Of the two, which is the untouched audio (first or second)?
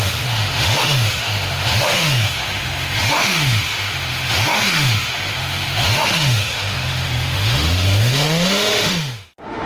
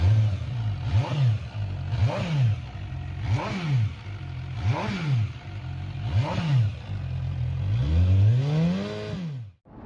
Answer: second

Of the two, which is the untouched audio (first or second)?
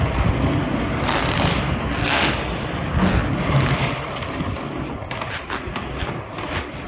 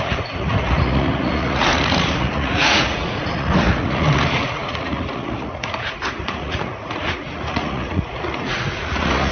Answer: first